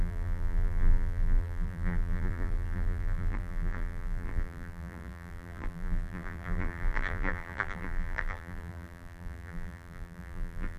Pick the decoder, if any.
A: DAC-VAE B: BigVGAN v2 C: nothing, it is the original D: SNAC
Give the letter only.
B